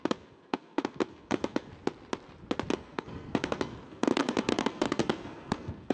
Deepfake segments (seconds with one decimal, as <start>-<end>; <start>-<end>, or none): 0.0-1.7; 2.7-5.9